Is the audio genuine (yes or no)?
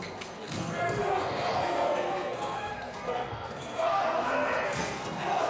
no